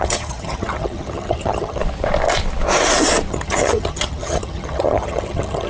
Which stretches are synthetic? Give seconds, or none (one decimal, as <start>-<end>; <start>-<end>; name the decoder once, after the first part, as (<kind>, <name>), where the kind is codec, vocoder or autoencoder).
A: 0.0-1.8 (vocoder, HiFi-GAN); 3.3-5.7

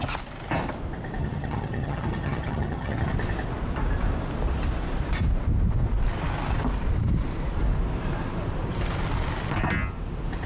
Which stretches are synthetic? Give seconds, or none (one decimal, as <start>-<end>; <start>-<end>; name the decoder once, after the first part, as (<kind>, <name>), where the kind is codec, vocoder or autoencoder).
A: 1.2-3.1 (vocoder, HiFi-GAN)